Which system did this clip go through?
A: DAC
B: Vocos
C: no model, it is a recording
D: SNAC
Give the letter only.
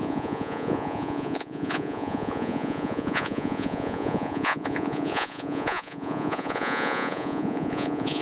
B